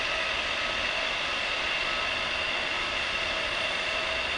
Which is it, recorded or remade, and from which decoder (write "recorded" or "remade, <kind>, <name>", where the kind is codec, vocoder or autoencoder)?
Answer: remade, vocoder, BigVGAN v2